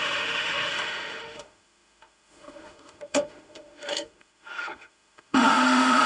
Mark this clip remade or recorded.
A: remade